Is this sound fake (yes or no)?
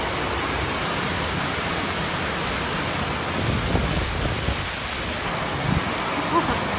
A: no